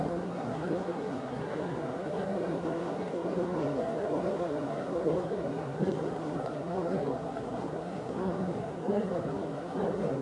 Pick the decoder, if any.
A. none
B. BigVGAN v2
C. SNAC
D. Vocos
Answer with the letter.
C